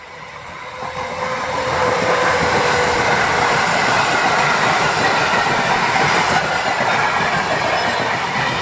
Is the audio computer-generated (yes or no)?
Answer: no